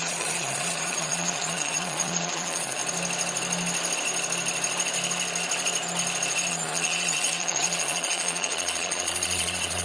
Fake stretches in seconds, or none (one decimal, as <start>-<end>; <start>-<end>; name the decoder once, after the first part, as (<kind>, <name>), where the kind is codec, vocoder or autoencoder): 0.0-2.8 (vocoder, Vocos); 6.5-9.8